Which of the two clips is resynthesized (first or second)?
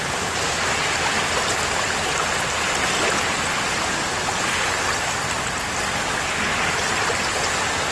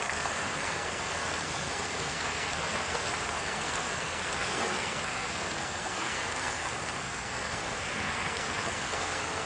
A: second